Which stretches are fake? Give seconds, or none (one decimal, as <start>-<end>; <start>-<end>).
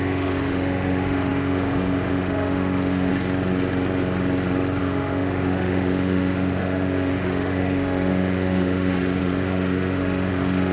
0.0-3.1; 4.8-10.7